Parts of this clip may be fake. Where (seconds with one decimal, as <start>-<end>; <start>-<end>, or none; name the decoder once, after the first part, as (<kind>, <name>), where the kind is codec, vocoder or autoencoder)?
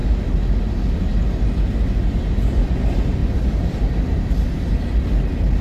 3.2-3.8 (vocoder, BigVGAN v2)